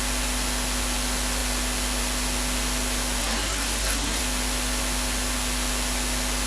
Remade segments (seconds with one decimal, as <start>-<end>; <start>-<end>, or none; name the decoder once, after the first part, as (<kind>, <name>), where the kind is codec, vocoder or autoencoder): 3.2-4.2 (codec, SNAC)